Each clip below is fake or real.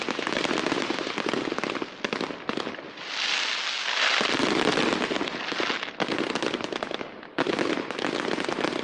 real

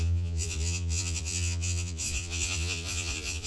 fake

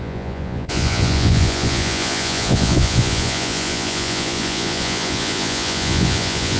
fake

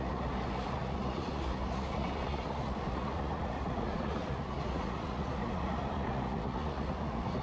fake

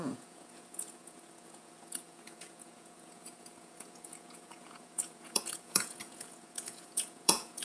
fake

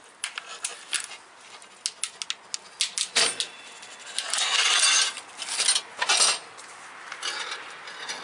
real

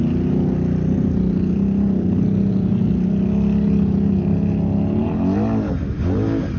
real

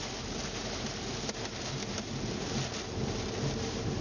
real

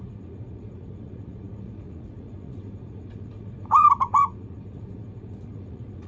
fake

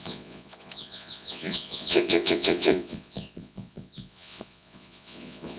fake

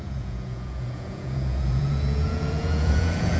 fake